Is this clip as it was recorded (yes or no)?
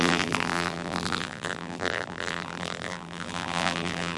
no